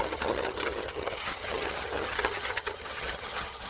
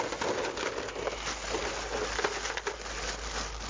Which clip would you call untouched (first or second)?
second